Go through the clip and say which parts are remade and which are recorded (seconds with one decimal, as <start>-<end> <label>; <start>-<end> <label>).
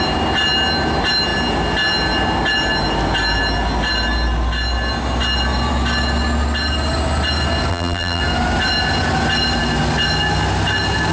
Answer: 0.0-7.7 recorded; 7.7-8.2 remade; 8.2-11.1 recorded